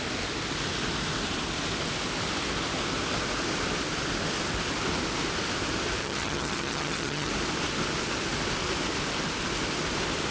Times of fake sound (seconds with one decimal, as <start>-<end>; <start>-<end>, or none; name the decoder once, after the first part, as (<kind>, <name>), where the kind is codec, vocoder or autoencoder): 6.0-7.3 (vocoder, HiFi-GAN)